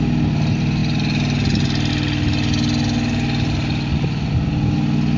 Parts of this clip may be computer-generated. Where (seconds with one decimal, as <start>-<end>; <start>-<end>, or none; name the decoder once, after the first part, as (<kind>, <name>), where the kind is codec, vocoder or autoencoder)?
none

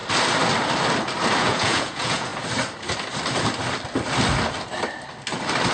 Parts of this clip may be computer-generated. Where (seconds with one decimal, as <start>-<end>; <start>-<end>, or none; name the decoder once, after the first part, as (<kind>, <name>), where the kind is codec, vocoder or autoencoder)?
1.4-2.3 (vocoder, Vocos)

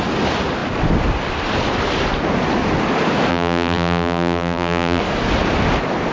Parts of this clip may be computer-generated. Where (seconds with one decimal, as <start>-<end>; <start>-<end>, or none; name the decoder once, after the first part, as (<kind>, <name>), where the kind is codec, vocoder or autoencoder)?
3.3-5.0 (vocoder, BigVGAN v2)

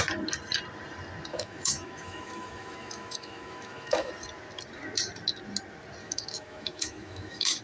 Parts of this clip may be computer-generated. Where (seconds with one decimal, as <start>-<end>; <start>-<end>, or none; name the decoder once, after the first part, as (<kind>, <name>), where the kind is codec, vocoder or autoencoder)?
1.3-4.1 (autoencoder, DAC-VAE); 6.0-7.6

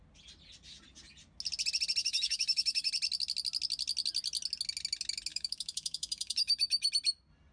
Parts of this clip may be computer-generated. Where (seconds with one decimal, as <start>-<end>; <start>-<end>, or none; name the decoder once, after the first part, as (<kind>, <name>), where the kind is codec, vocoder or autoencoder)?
2.0-2.9 (autoencoder, DAC-VAE); 5.3-6.9